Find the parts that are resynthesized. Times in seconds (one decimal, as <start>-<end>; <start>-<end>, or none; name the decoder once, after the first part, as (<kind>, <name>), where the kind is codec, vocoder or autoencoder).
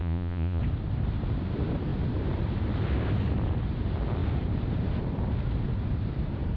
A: 0.0-0.6 (vocoder, Vocos)